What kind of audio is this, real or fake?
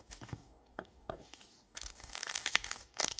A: fake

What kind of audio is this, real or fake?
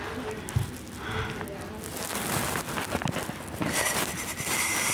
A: real